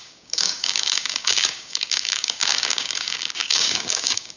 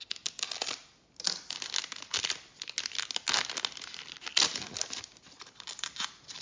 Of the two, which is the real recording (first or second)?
second